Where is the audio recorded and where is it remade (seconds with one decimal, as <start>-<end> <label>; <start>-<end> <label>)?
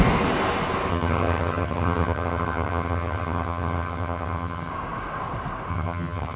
0.0-0.9 recorded; 0.9-4.7 remade; 4.7-5.7 recorded; 5.7-6.4 remade